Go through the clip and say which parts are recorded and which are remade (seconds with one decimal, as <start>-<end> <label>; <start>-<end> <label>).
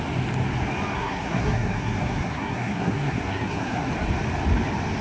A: 0.0-0.9 recorded; 0.9-3.9 remade; 3.9-5.0 recorded